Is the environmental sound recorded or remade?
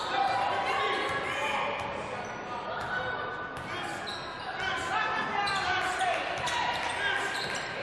recorded